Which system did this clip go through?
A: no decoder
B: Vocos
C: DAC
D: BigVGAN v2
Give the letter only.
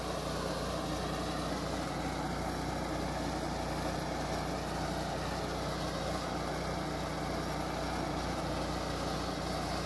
A